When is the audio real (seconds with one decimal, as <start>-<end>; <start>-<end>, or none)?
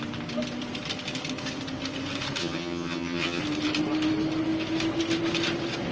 0.0-2.4; 3.4-5.9